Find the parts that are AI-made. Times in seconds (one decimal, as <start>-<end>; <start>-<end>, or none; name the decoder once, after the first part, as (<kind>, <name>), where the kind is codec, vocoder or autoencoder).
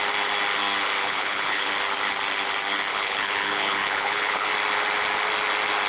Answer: 1.0-1.7 (codec, HILCodec); 2.9-4.5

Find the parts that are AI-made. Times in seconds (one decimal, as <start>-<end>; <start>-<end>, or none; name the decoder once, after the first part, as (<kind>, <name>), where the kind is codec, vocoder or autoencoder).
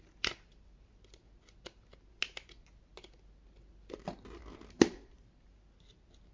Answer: none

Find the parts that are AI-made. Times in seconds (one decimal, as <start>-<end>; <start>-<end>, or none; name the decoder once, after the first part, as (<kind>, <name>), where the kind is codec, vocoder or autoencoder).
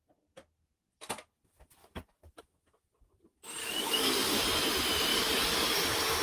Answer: 1.8-2.4 (codec, DAC); 3.6-4.4; 5.1-6.2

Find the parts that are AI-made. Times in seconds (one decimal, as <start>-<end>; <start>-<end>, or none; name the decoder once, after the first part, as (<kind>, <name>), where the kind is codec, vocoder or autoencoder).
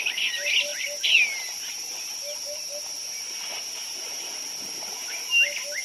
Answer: none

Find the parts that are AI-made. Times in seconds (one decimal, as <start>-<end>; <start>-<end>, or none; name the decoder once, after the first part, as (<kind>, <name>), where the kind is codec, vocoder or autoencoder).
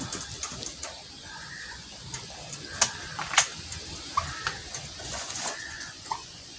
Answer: 1.2-1.9 (vocoder, Vocos); 5.0-6.6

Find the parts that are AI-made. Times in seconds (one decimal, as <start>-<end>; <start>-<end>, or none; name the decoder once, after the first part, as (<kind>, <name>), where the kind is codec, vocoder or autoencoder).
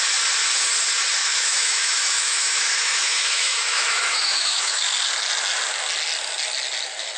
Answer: 1.2-4.8 (autoencoder, DAC-VAE)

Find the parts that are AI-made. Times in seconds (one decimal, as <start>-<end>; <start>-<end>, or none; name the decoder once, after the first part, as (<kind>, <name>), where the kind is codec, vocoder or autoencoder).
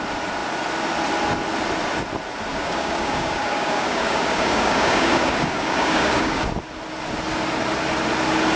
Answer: 2.5-6.4 (codec, DAC)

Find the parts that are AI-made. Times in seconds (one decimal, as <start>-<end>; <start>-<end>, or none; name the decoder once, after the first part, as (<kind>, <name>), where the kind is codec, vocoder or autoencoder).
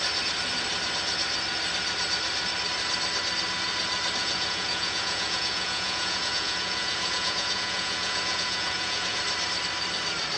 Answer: 4.2-9.2 (vocoder, Vocos)